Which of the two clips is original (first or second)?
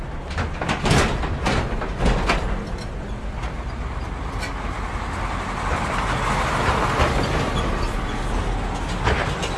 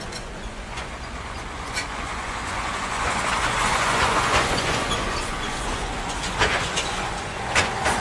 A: first